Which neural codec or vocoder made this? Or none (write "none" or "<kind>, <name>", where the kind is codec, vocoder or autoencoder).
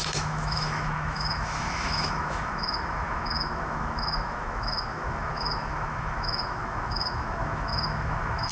autoencoder, DAC-VAE